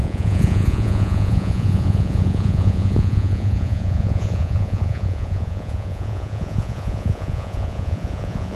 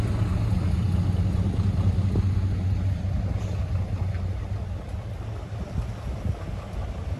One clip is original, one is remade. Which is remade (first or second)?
first